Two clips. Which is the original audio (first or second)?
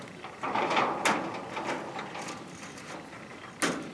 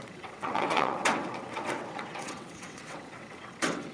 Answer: first